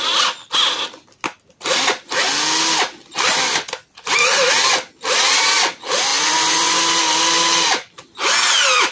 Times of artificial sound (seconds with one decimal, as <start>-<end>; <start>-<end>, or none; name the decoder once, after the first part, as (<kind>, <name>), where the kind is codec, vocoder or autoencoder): 6.1-6.8 (vocoder, Vocos)